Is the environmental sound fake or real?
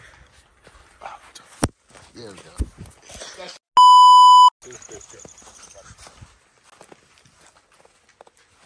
real